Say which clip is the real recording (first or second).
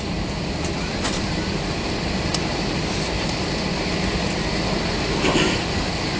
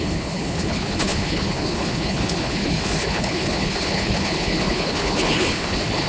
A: first